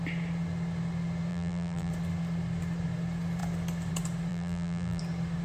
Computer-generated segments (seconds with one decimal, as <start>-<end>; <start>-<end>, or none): 1.3-1.9; 4.3-5.0